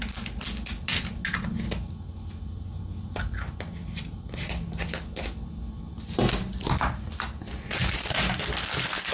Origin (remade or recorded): recorded